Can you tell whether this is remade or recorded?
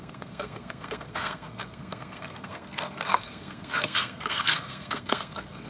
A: remade